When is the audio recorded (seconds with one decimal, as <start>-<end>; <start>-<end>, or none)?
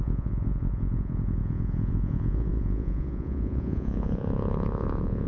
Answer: none